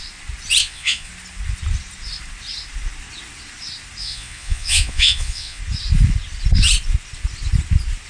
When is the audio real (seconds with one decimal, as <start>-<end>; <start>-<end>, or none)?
0.0-0.6; 1.1-4.0; 5.6-8.1